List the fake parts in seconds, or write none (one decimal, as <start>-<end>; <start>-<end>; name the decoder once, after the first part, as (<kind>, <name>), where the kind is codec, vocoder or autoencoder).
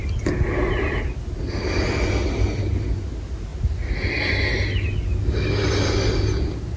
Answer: none